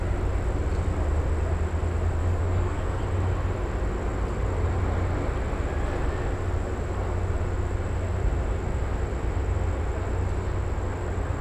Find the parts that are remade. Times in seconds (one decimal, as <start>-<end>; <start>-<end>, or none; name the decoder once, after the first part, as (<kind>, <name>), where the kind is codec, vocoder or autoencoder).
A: 2.2-3.0 (codec, DAC)